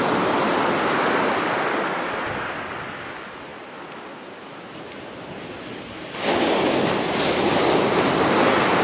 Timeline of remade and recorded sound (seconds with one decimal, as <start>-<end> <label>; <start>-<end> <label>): 0.0-8.8 recorded